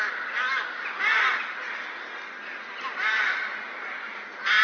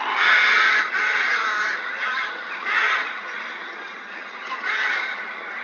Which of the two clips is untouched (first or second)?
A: first